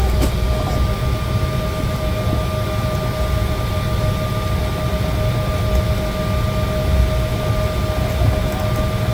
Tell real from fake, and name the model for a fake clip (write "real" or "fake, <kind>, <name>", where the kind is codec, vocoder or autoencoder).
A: real